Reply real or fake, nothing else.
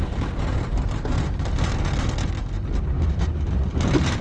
real